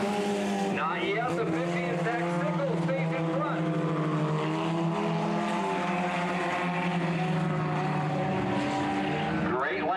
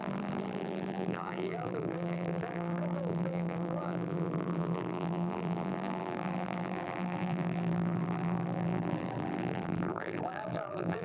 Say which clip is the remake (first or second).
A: second